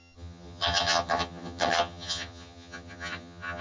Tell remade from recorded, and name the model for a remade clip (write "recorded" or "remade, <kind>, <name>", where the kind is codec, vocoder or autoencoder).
remade, vocoder, HiFi-GAN